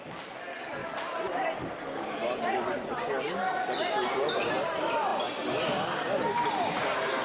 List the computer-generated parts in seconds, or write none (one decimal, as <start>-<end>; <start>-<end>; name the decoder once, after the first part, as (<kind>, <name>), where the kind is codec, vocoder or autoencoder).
none